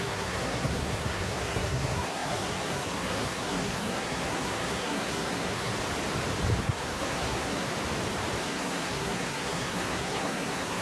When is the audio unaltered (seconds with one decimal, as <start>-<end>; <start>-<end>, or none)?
5.7-6.6; 7.7-8.4